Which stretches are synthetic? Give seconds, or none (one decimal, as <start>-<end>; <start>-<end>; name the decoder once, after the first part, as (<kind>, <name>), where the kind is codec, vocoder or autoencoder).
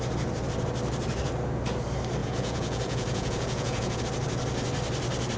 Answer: 2.2-4.0 (vocoder, Vocos)